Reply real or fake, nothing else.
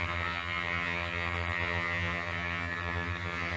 fake